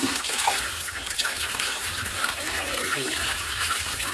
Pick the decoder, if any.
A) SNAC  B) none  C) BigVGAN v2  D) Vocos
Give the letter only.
A